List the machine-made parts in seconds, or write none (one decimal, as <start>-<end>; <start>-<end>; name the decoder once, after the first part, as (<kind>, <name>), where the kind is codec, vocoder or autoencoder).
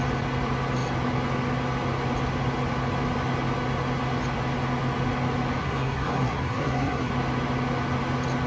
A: 5.6-7.1 (codec, SNAC)